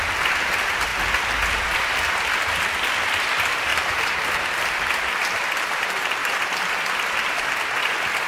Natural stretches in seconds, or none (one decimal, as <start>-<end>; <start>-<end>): 0.0-3.7; 4.3-6.2; 6.7-8.3